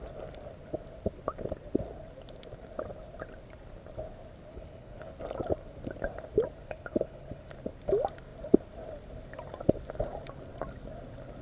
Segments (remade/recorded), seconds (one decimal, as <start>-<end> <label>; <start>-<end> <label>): 0.0-4.5 recorded; 4.5-5.1 remade; 5.1-6.6 recorded; 6.6-7.5 remade; 7.5-11.4 recorded